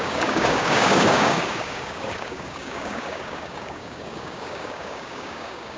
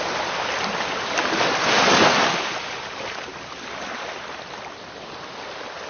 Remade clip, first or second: first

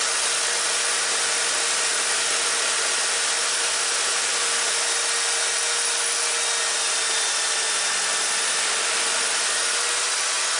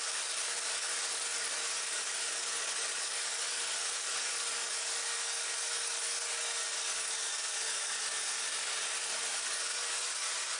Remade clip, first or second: second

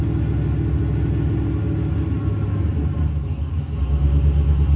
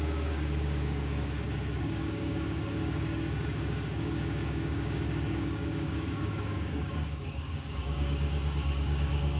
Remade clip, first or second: second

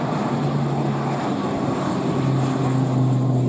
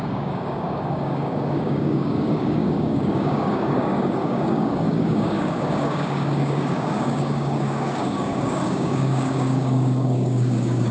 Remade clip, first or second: second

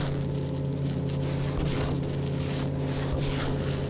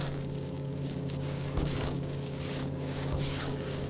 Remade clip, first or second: second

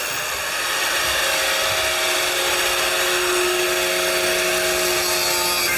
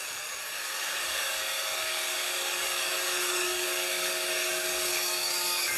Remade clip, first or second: second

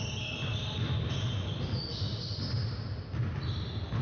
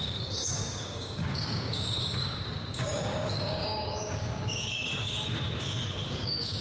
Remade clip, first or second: second